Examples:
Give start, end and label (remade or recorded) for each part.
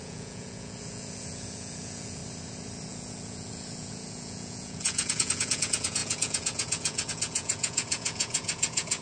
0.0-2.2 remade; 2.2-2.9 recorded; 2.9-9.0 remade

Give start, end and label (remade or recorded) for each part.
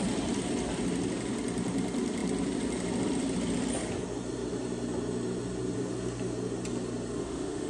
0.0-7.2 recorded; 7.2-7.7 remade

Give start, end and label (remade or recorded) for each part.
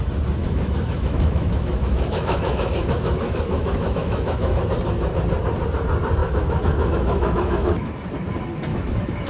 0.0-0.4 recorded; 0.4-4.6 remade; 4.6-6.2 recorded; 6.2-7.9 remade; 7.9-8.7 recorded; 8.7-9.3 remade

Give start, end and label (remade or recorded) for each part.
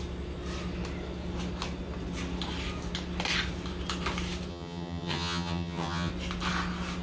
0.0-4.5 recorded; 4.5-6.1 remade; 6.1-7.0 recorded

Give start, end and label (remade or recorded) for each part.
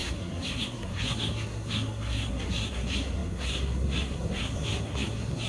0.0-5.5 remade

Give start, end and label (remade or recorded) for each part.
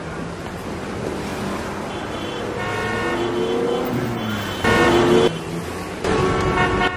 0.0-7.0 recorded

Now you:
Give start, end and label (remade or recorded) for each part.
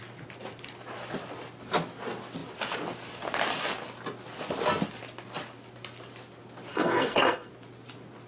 0.0-6.7 recorded; 6.7-7.5 remade; 7.5-8.3 recorded